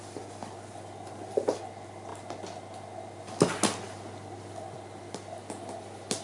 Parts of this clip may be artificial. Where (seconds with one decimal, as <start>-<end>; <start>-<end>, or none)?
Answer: none